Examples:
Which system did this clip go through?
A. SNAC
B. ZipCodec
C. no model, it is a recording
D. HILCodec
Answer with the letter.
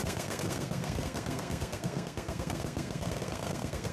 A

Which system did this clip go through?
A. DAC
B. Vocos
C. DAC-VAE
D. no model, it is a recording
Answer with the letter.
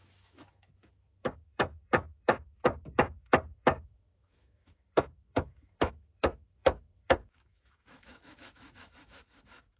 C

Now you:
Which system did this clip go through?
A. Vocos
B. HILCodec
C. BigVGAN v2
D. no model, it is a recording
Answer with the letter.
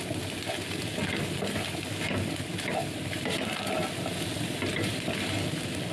D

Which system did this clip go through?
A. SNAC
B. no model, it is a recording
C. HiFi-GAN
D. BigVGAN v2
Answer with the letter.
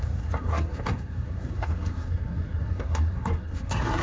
A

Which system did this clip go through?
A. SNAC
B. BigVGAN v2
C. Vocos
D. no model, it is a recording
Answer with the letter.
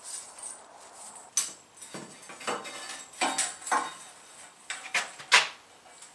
D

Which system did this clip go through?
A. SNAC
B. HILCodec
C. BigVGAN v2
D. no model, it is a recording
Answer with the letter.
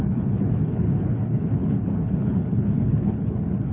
B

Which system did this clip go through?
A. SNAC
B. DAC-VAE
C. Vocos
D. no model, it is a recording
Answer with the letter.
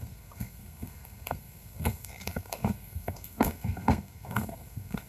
A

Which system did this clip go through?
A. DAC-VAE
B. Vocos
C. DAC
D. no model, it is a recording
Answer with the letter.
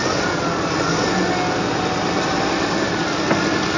D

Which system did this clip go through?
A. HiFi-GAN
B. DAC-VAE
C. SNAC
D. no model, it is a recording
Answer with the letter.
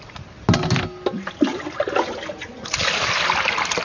D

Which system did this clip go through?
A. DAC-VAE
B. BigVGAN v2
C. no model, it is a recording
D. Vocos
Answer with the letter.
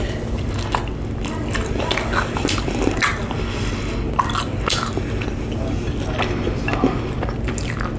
C